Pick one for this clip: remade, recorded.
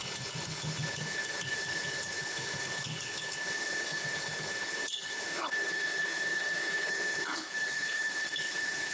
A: remade